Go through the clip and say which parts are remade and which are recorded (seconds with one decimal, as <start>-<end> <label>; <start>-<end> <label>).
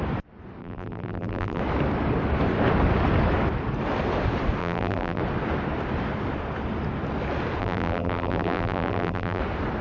0.0-0.6 recorded; 0.6-1.6 remade; 1.6-4.6 recorded; 4.6-5.2 remade; 5.2-7.6 recorded; 7.6-9.4 remade; 9.4-9.8 recorded